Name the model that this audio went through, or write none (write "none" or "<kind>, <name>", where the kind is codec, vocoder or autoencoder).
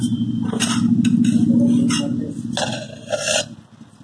none